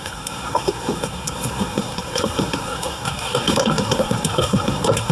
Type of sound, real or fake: fake